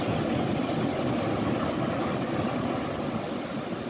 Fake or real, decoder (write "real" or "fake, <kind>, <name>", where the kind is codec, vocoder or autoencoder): real